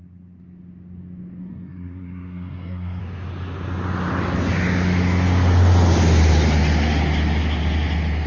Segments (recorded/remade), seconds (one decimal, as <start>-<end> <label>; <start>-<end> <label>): 0.0-1.4 recorded; 1.4-3.0 remade; 3.0-8.3 recorded